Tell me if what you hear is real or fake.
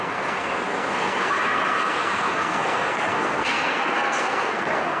fake